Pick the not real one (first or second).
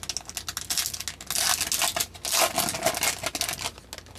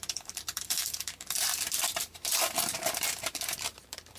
second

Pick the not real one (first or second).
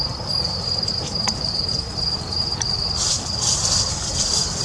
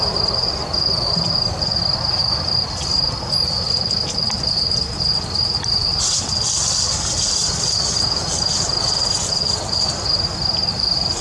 first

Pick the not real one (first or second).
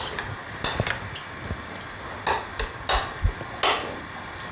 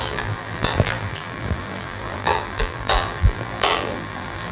second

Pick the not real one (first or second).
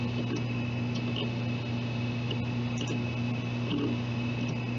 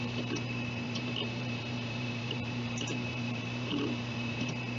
second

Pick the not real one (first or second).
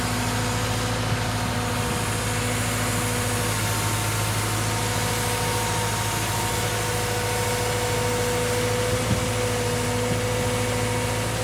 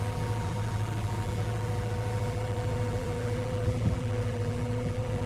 second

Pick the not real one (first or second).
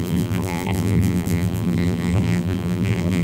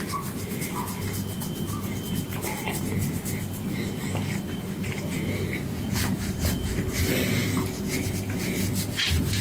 first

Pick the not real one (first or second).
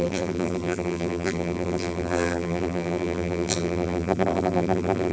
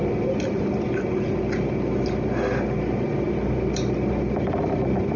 first